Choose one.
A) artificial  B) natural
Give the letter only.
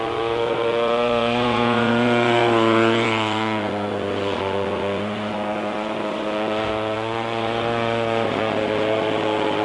A